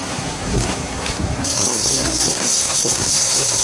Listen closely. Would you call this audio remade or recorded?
remade